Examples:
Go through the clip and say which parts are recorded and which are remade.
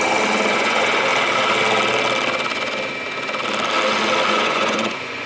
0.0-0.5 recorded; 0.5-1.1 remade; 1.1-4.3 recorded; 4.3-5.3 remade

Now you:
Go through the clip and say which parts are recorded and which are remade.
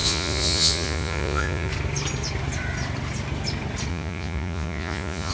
0.0-1.7 remade; 1.7-3.9 recorded; 3.9-5.3 remade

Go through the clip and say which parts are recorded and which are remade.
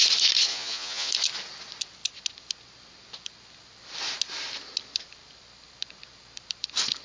0.0-0.5 recorded; 0.5-1.1 remade; 1.1-7.0 recorded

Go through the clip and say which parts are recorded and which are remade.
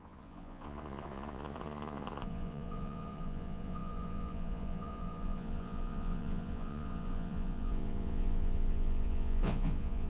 0.0-10.1 remade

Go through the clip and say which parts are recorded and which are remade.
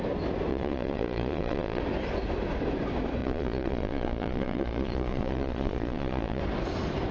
0.0-0.5 recorded; 0.5-1.8 remade; 1.8-3.2 recorded; 3.2-6.4 remade; 6.4-7.1 recorded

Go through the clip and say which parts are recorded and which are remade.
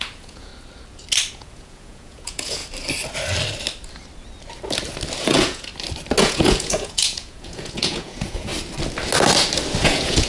0.0-0.5 remade; 0.5-1.3 recorded; 1.3-2.6 remade; 2.6-5.2 recorded; 5.2-5.7 remade; 5.7-6.2 recorded; 6.2-8.5 remade; 8.5-9.8 recorded; 9.8-10.3 remade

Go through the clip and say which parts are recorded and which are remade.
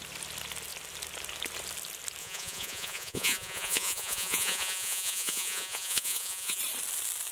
0.0-2.2 recorded; 2.2-6.6 remade; 6.6-7.3 recorded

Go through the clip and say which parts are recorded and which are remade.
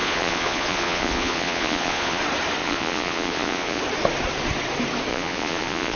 0.0-2.2 remade; 2.2-2.6 recorded; 2.6-3.8 remade; 3.8-5.1 recorded; 5.1-6.0 remade